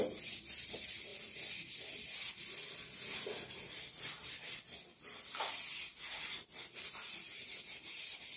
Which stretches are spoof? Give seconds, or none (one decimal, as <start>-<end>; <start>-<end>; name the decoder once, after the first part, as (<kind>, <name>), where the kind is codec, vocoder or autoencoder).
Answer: 0.0-1.1 (vocoder, BigVGAN v2); 2.7-5.9; 6.4-8.4